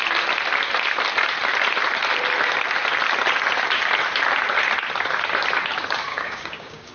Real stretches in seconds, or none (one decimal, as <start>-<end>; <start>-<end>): 0.0-6.1